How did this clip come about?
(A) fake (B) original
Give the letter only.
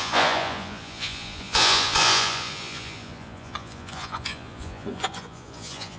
A